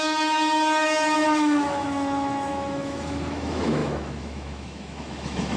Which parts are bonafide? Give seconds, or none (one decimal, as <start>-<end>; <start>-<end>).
none